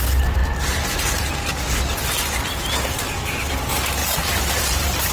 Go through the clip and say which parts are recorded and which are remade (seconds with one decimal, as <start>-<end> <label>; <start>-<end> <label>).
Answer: 0.0-4.0 recorded; 4.0-5.1 remade